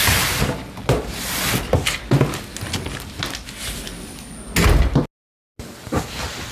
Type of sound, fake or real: real